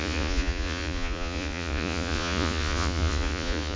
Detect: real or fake fake